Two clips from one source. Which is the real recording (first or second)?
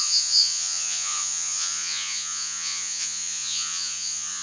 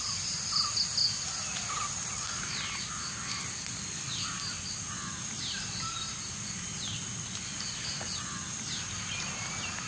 second